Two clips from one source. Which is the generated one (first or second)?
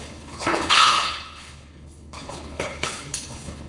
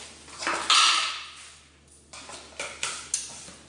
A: first